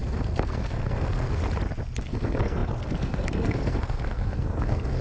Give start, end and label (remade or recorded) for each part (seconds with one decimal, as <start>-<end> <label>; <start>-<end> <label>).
0.0-1.4 remade; 1.4-2.0 recorded; 2.0-5.0 remade